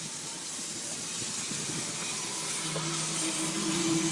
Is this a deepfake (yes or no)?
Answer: no